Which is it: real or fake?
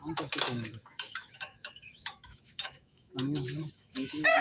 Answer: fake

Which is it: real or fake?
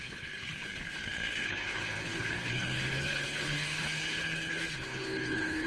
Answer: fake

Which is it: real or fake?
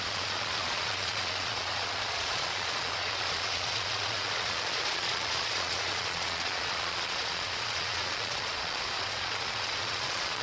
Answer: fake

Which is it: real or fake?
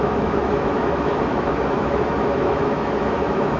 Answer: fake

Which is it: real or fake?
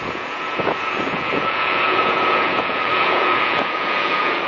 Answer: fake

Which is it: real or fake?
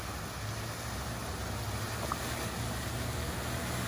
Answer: real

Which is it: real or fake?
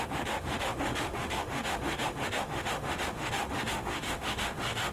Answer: fake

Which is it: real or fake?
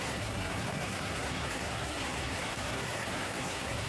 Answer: fake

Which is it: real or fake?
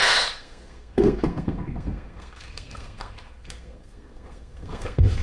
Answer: fake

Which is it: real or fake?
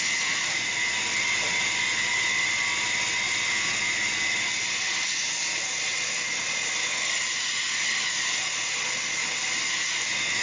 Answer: real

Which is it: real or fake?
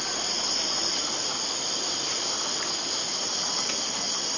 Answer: fake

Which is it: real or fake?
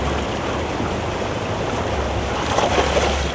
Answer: real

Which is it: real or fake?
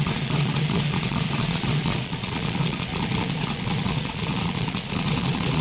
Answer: fake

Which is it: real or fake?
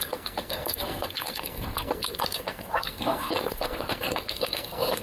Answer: fake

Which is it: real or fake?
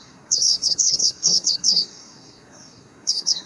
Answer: fake